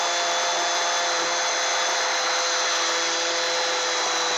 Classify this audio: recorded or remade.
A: recorded